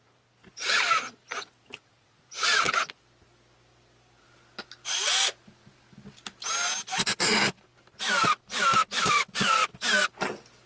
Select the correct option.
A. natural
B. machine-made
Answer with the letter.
A